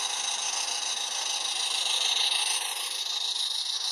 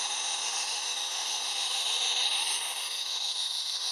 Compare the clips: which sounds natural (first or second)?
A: first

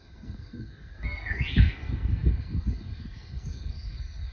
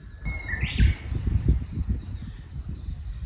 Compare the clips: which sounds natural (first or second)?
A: second